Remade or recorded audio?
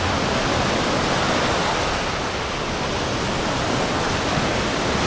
recorded